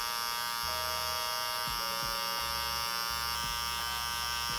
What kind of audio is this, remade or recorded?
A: recorded